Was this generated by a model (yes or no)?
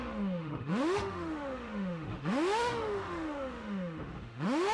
yes